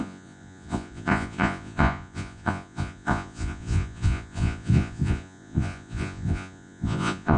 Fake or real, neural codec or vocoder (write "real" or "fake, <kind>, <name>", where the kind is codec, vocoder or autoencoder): fake, vocoder, Vocos